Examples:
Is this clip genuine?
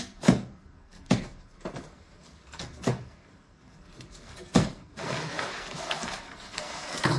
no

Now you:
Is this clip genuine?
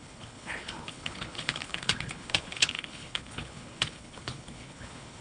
no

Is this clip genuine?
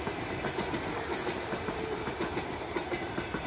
no